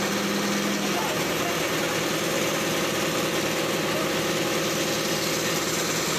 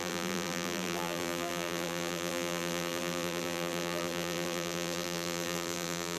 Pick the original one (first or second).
first